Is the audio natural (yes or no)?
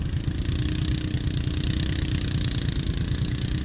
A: yes